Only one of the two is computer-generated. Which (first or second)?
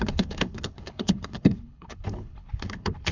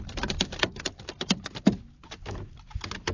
first